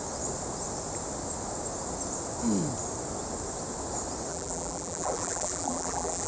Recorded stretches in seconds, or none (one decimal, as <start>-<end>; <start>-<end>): 0.0-4.3